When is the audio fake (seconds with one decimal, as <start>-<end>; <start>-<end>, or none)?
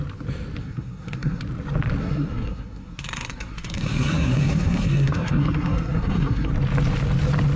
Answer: 0.6-1.4; 2.0-6.5